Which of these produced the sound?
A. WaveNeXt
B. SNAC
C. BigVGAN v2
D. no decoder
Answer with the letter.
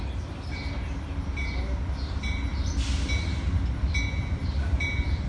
D